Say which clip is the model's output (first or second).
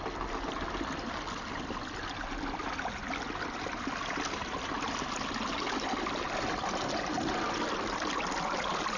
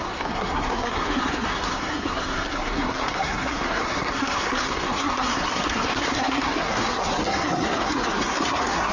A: second